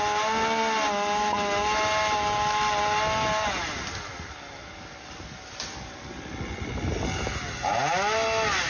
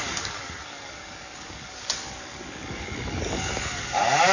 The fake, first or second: second